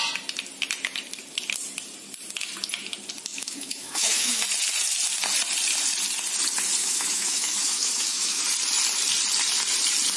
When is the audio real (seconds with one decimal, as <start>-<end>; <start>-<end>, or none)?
0.0-3.3; 4.4-6.8; 8.4-10.2